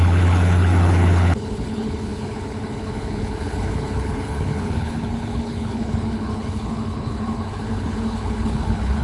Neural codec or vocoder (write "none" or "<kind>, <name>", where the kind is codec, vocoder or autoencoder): codec, HILCodec